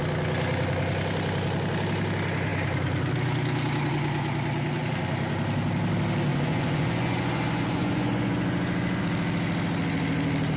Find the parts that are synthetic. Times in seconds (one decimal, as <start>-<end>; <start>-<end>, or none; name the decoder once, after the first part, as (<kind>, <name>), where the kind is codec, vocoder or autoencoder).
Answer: 6.3-9.0 (vocoder, Vocos)